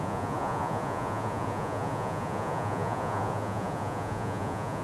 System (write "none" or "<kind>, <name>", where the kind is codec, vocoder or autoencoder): vocoder, Vocos